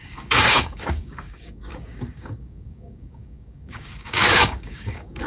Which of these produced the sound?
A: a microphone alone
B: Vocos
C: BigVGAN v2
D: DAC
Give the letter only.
D